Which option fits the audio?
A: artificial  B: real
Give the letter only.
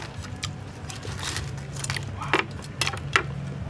B